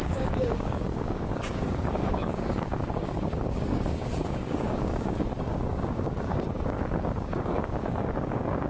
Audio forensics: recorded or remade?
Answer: remade